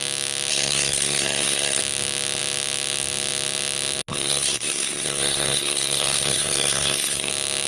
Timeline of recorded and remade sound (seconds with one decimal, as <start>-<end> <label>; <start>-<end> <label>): 0.0-0.5 recorded; 0.5-1.8 remade; 1.8-4.1 recorded; 4.1-7.3 remade; 7.3-7.7 recorded